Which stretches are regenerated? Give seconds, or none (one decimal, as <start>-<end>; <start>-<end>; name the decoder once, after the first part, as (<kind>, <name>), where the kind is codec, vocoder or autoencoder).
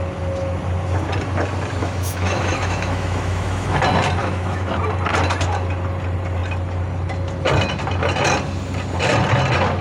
1.8-3.8 (autoencoder, DAC-VAE); 4.2-4.7